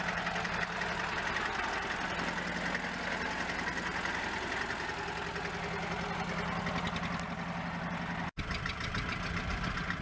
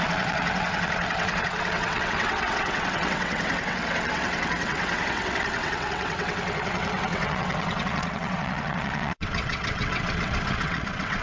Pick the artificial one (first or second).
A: second